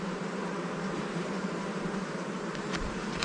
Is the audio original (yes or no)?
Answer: no